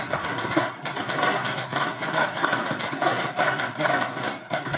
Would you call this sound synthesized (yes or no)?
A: yes